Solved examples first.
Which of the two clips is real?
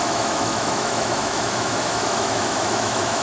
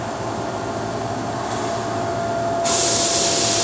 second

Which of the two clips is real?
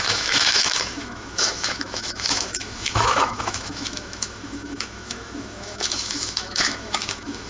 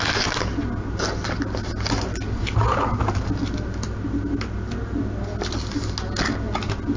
second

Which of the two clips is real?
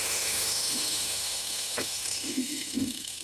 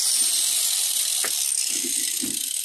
second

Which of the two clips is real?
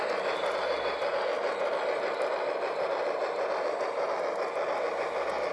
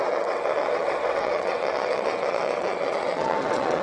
first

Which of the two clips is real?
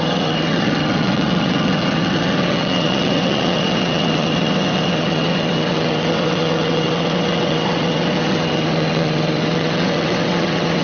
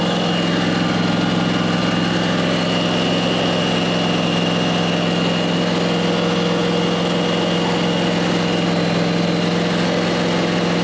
second